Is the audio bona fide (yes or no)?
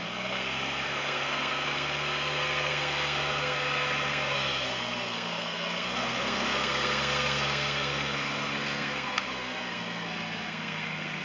no